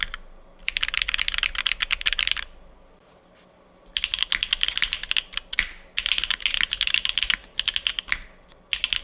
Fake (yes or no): no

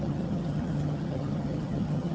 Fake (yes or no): yes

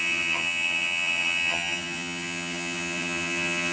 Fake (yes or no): yes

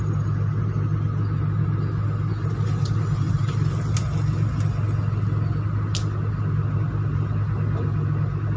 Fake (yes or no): no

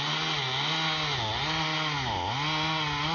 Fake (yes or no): no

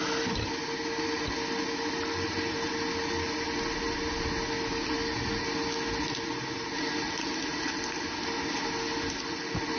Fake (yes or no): no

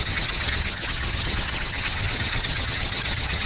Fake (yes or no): yes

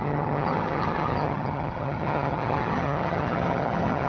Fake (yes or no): yes